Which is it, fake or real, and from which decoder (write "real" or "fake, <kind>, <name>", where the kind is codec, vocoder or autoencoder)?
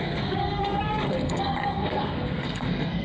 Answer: fake, codec, SNAC